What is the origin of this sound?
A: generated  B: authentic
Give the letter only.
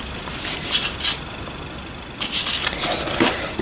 A